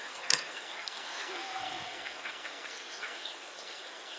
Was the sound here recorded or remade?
remade